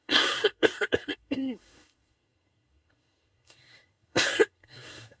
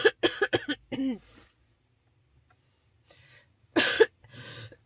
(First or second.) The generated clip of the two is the first